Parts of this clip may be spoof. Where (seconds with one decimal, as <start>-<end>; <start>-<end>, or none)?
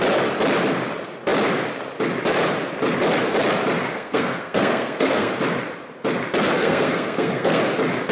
3.9-5.3; 6.6-7.6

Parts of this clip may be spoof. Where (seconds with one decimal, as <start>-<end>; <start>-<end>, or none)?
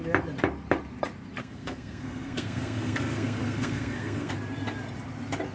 1.4-4.3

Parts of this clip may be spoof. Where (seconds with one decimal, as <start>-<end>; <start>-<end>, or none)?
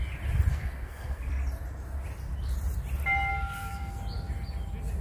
0.5-1.3; 3.3-4.0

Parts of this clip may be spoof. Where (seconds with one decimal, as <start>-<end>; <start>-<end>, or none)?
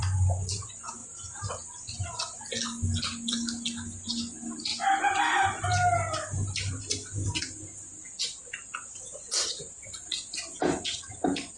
none